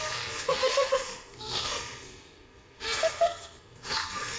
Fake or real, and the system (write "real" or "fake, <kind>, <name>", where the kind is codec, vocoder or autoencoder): fake, codec, SNAC